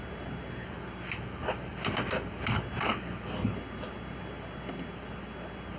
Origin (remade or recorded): recorded